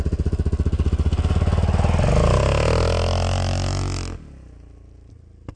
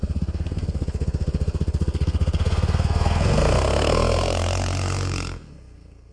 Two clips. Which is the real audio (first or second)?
first